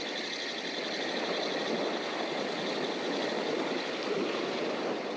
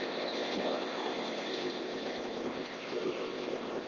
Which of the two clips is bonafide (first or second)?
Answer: first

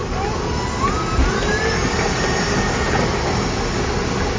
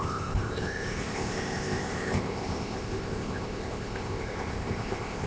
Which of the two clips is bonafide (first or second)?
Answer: first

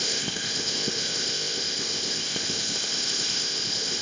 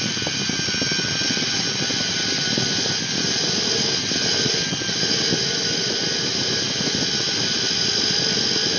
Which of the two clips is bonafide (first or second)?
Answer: second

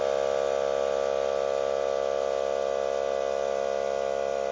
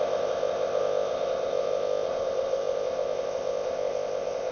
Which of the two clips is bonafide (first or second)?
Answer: first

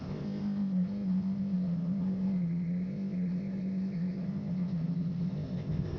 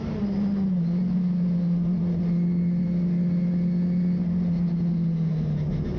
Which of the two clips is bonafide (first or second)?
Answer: second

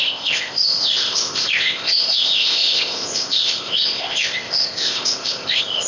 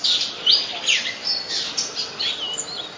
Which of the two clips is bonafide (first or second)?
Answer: second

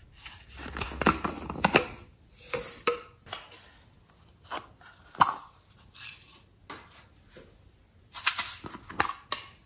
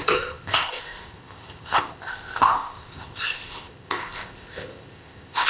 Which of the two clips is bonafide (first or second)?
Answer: first